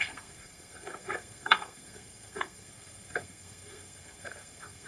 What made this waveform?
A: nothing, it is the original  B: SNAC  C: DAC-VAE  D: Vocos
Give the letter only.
B